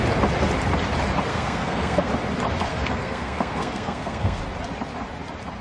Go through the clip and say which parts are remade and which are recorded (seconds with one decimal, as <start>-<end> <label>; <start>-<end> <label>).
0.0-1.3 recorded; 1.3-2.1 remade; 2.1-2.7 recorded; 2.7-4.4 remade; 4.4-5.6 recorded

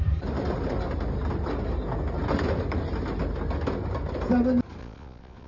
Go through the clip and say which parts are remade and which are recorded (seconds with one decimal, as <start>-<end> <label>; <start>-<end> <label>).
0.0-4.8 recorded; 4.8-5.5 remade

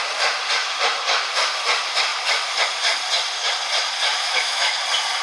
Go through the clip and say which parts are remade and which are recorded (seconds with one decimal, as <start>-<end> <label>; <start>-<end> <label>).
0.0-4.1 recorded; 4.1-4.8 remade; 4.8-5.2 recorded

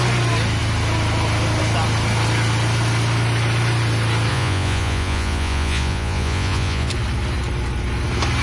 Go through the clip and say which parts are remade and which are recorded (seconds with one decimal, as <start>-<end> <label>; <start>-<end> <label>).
0.0-4.3 recorded; 4.3-6.9 remade; 6.9-8.4 recorded